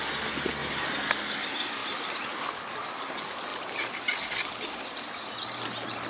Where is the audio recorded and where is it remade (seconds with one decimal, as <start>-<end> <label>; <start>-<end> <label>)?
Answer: 0.0-3.5 recorded; 3.5-4.5 remade; 4.5-6.1 recorded